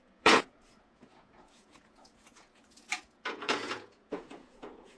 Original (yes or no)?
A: no